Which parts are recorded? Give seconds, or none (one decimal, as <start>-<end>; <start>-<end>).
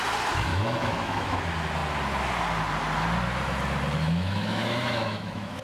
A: 0.0-0.5; 1.4-4.0